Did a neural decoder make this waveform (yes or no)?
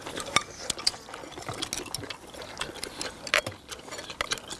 no